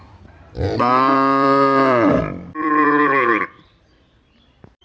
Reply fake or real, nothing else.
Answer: fake